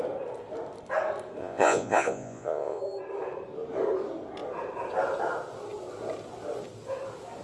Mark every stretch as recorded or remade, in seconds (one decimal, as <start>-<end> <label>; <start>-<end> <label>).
0.0-1.4 recorded; 1.4-2.8 remade; 2.8-7.4 recorded